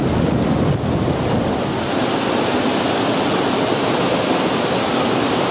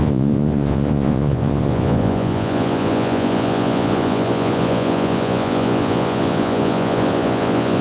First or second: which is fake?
second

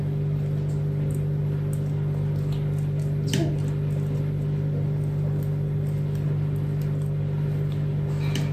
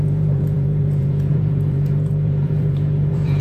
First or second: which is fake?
second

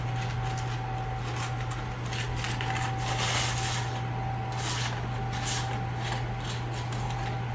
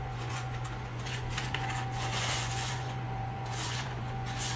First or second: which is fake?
second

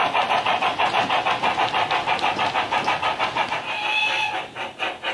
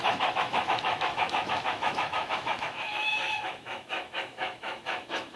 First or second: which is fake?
second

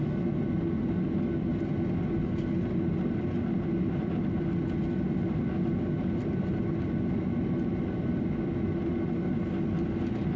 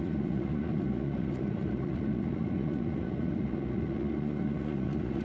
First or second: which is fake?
second